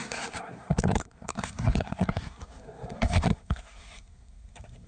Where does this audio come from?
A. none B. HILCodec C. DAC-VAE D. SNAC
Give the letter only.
D